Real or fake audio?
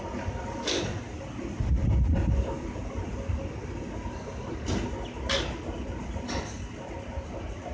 real